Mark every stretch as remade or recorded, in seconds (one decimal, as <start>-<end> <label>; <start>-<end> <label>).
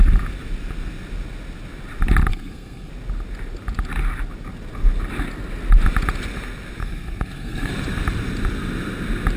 0.0-2.3 recorded; 2.3-2.9 remade; 2.9-6.8 recorded; 6.8-7.7 remade; 7.7-9.4 recorded